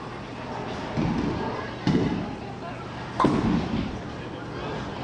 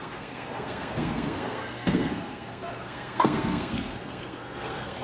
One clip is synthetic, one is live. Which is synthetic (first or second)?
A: second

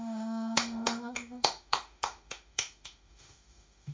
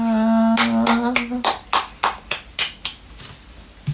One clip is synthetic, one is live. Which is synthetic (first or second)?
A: first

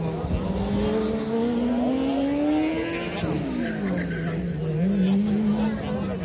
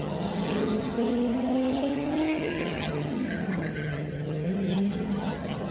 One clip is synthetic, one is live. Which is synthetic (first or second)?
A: second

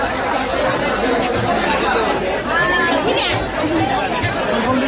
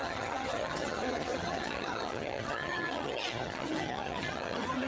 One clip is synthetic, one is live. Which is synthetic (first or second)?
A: second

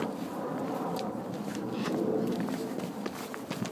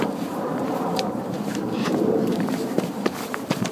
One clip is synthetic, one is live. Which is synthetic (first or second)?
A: second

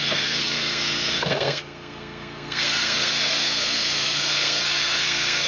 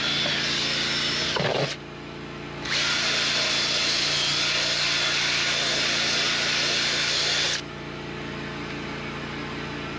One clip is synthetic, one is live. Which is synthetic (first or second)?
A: first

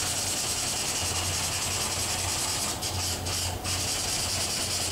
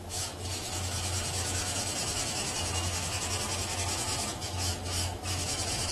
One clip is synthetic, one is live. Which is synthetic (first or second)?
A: second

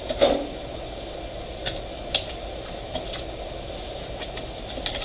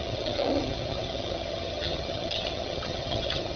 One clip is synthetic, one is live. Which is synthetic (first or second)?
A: second